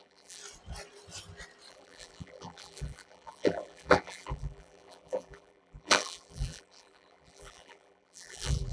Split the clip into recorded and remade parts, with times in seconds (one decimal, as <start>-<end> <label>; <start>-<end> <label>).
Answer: 0.0-0.4 remade; 0.4-1.7 recorded; 1.7-8.7 remade